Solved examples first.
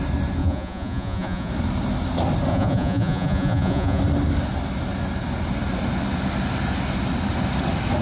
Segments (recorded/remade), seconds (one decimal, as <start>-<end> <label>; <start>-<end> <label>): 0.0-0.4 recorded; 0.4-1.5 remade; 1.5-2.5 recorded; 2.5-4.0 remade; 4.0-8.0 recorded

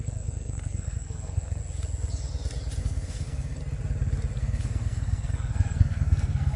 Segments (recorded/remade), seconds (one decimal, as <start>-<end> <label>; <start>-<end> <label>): 0.0-1.6 remade; 1.6-2.8 recorded; 2.8-3.6 remade; 3.6-4.4 recorded; 4.4-6.6 remade

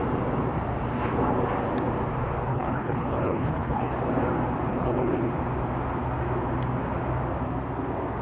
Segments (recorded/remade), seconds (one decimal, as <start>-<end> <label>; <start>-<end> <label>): 0.0-2.5 recorded; 2.5-4.0 remade; 4.0-4.7 recorded; 4.7-5.3 remade; 5.3-8.2 recorded

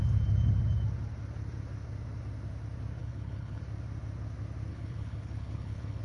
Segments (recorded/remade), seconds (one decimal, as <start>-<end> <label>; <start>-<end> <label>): 0.0-3.0 recorded; 3.0-3.6 remade; 3.6-4.7 recorded; 4.7-6.0 remade